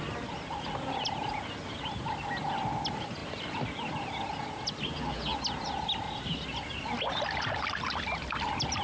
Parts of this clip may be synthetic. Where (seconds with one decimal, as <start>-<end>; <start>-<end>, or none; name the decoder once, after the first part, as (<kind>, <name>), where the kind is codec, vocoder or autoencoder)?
none